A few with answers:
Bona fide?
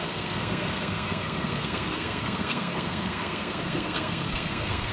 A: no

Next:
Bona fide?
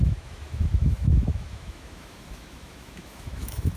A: no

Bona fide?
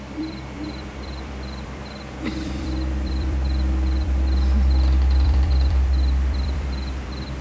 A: no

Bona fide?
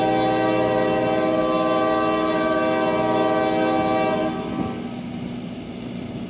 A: yes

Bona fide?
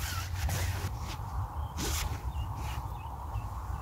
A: yes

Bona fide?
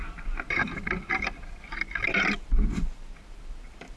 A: no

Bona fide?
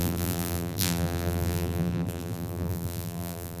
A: no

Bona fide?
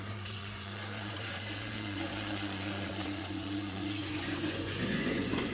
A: no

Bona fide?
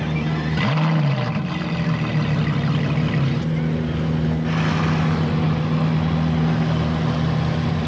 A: yes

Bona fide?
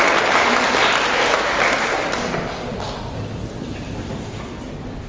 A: yes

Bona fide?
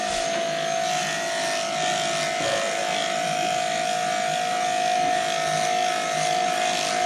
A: yes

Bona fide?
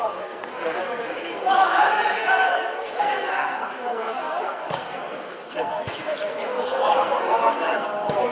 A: no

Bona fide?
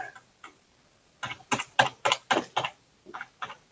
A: yes